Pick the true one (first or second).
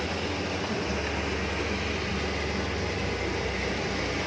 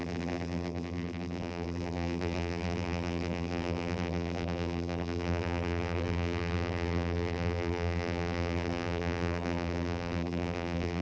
first